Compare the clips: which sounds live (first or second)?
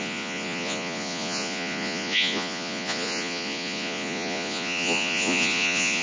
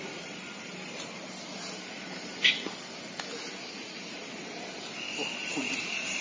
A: second